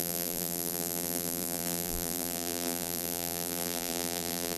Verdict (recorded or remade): remade